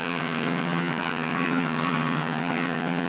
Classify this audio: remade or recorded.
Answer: remade